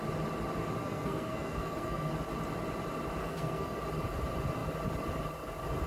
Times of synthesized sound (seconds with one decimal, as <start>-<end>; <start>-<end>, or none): 0.8-2.1; 3.2-3.8

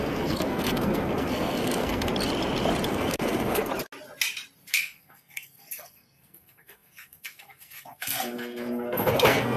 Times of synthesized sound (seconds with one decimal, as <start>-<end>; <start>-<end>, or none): 0.0-2.1; 2.9-3.7; 4.7-9.6

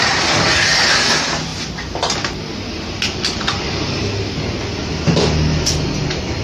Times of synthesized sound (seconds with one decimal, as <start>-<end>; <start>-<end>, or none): none

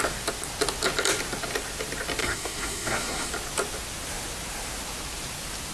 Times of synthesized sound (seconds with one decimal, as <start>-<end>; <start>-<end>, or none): 2.2-3.3

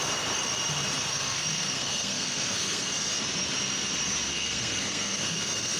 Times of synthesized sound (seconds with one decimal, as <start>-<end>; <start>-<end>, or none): 1.1-3.1; 4.3-5.8

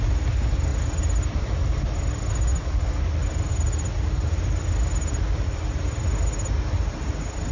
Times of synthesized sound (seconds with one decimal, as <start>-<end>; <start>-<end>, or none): none

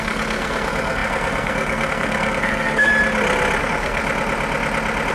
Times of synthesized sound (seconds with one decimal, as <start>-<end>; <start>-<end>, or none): 0.0-2.9; 3.6-4.0